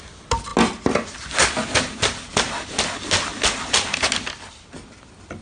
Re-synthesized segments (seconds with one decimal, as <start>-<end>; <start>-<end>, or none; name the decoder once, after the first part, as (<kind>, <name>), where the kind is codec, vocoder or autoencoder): none